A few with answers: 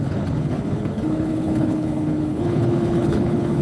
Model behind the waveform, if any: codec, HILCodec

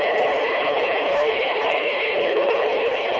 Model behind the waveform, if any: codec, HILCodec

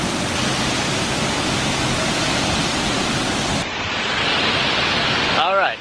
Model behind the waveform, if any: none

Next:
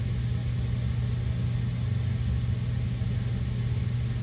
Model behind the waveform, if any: none